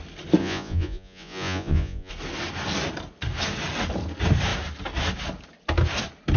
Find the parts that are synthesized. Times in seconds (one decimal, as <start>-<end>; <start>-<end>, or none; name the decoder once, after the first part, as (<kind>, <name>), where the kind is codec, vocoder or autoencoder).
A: 0.4-2.1 (vocoder, Vocos)